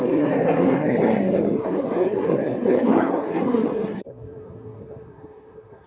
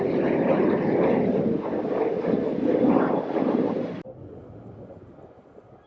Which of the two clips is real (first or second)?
second